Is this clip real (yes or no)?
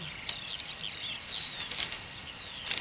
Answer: yes